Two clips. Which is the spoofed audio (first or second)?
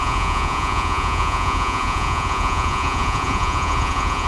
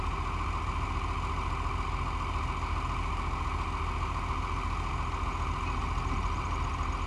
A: first